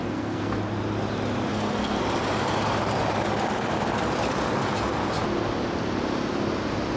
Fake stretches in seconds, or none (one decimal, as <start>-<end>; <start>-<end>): 0.0-0.6; 1.5-2.0